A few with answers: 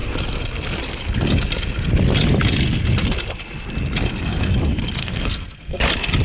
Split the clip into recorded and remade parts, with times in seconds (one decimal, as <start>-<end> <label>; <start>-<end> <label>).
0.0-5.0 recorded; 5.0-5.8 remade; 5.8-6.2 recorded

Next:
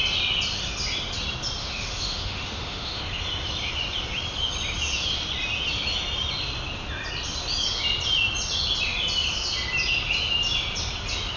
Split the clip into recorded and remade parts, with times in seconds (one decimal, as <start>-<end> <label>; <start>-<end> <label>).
0.0-1.6 recorded; 1.6-3.0 remade; 3.0-11.4 recorded

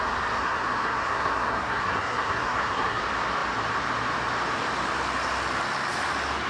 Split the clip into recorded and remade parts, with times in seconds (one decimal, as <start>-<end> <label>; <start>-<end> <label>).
0.0-0.4 recorded; 0.4-3.0 remade; 3.0-6.5 recorded